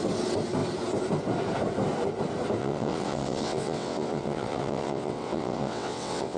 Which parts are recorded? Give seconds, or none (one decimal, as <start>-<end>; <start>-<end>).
0.0-2.6